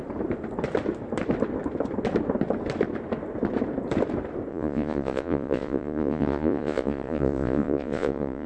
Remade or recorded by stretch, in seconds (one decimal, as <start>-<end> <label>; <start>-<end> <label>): 0.0-4.5 recorded; 4.5-8.5 remade

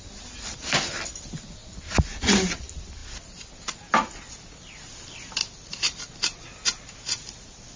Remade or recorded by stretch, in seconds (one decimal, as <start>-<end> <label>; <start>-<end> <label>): 0.0-7.8 recorded

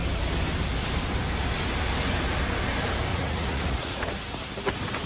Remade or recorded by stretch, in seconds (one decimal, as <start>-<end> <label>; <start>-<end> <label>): 0.0-3.1 recorded; 3.1-4.1 remade; 4.1-5.1 recorded